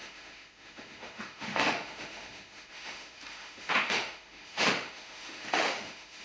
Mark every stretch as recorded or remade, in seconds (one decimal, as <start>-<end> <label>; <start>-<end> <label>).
0.0-6.2 remade